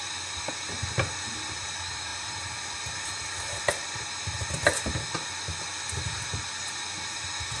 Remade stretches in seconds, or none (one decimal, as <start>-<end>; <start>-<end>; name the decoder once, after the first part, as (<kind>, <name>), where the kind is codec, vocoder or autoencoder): none